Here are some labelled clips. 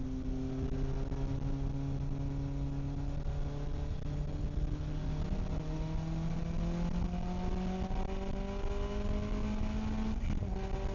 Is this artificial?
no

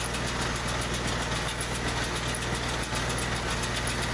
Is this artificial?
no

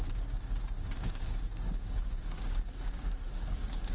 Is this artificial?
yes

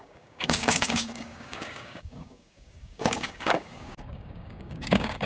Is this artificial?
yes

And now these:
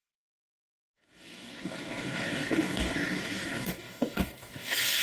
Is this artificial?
yes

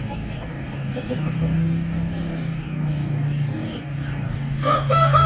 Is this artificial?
yes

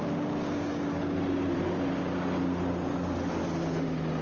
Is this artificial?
no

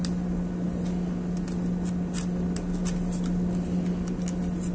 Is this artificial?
no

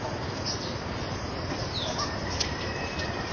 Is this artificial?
no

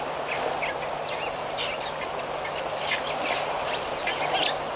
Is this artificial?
no